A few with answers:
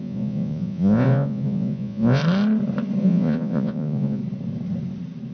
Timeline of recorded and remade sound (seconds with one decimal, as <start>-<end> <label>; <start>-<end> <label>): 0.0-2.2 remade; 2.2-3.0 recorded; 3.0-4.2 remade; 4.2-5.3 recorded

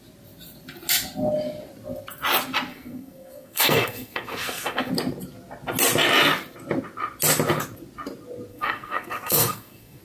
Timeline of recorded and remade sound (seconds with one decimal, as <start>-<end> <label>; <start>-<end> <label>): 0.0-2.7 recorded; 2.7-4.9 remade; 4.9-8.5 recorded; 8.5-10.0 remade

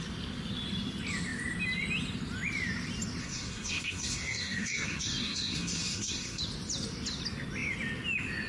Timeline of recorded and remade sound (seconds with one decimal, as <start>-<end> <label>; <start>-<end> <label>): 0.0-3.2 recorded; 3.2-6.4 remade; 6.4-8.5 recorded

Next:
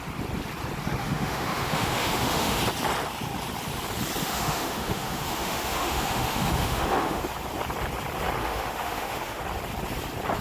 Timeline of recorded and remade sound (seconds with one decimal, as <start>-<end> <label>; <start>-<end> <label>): 0.0-1.0 recorded; 1.0-2.6 remade; 2.6-4.2 recorded; 4.2-7.2 remade; 7.2-8.4 recorded; 8.4-9.4 remade; 9.4-10.4 recorded

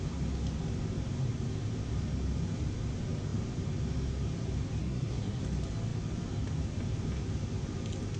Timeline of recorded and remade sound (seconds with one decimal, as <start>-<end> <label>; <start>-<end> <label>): 0.0-4.8 recorded; 4.8-5.4 remade; 5.4-8.2 recorded